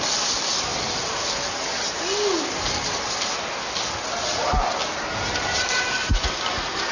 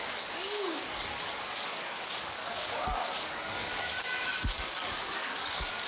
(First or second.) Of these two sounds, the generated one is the second